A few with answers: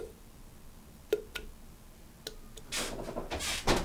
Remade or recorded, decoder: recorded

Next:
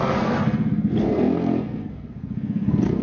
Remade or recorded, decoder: remade, codec, SNAC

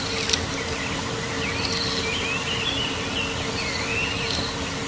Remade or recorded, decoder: recorded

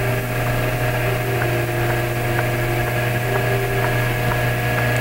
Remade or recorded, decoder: recorded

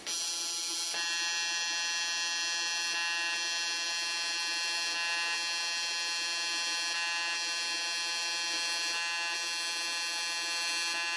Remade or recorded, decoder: recorded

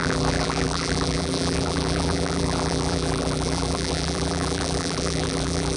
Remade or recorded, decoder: remade, vocoder, BigVGAN v2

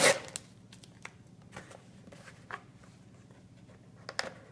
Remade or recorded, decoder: recorded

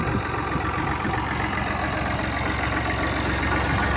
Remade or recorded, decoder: recorded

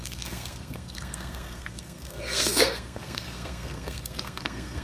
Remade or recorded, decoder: remade, codec, SNAC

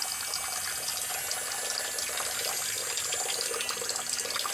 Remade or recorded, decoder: recorded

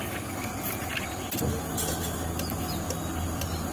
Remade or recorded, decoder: recorded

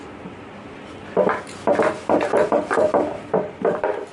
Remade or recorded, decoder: remade, vocoder, BigVGAN v2